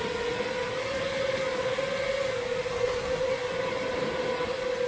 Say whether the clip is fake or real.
real